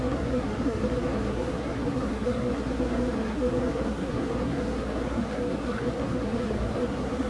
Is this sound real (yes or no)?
no